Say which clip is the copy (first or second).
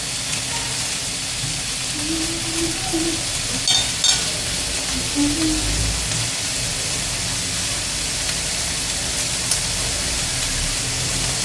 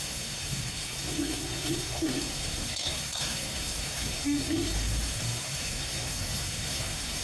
second